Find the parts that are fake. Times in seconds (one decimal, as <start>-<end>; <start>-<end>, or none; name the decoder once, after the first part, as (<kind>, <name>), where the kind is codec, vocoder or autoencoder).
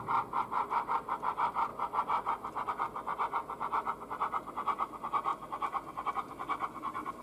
1.7-2.7 (vocoder, BigVGAN v2)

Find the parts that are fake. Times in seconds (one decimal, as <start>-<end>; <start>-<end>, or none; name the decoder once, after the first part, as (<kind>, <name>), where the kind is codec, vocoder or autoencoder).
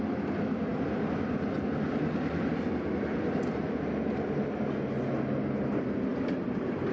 none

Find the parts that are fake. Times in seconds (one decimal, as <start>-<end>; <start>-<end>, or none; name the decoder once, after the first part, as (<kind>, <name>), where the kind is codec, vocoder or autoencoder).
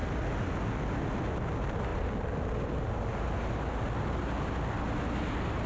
none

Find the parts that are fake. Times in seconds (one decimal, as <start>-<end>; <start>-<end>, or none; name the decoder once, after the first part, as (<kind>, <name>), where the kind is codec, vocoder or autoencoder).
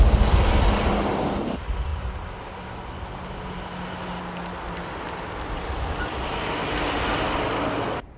none